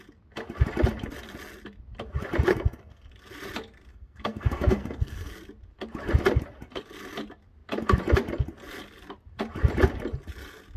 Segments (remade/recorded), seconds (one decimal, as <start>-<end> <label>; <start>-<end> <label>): 0.0-2.5 recorded; 2.5-3.1 remade; 3.1-3.9 recorded; 3.9-5.3 remade; 5.3-10.8 recorded